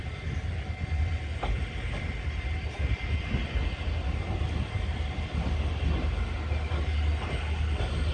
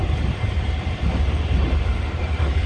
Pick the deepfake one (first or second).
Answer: second